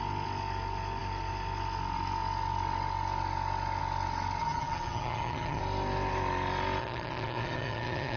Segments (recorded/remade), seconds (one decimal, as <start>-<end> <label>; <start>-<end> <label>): 0.0-4.4 recorded; 4.4-5.6 remade; 5.6-6.8 recorded; 6.8-8.2 remade